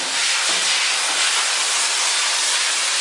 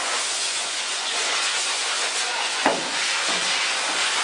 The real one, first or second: first